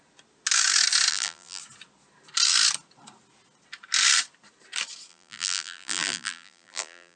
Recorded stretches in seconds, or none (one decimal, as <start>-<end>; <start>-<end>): 0.0-1.1; 1.6-5.1